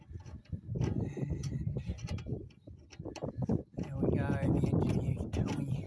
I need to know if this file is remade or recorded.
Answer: recorded